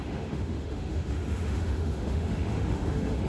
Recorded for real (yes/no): no